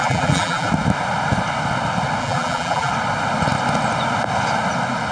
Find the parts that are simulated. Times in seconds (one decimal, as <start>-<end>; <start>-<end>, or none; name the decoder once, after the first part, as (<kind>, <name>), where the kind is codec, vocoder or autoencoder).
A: 0.0-0.7 (vocoder, BigVGAN v2); 2.2-2.9